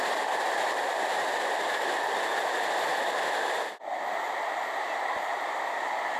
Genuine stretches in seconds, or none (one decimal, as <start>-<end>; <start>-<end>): 0.0-6.2